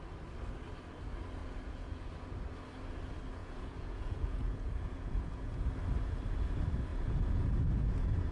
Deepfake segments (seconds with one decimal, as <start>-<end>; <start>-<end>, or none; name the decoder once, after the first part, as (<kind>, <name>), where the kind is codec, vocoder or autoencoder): 1.4-2.1 (vocoder, Vocos); 3.4-5.6; 6.9-8.3